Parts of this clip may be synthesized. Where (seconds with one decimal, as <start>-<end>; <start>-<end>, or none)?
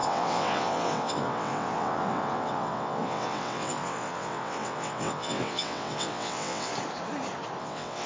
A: 0.0-6.7; 7.6-8.1